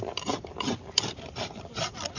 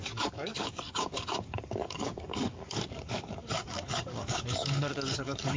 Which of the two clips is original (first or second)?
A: first